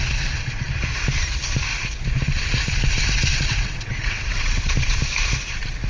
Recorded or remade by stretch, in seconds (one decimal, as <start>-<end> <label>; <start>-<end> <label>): 0.0-3.3 recorded; 3.3-4.7 remade; 4.7-5.9 recorded